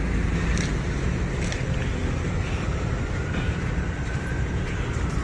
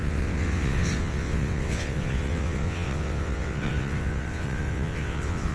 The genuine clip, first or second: first